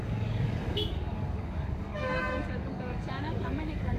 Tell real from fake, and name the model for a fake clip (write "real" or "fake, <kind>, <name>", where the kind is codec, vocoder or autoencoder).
fake, codec, DAC